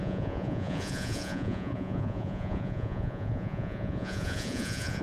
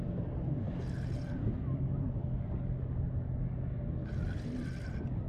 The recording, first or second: second